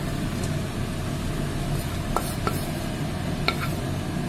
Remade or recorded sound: recorded